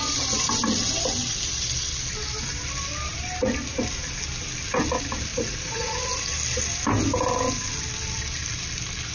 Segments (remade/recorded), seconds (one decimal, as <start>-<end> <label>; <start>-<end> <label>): 0.0-5.3 recorded; 5.3-6.0 remade; 6.0-9.1 recorded